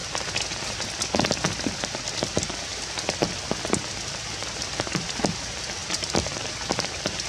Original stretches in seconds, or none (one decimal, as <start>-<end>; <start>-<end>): 0.0-2.7; 3.3-5.8; 6.5-7.3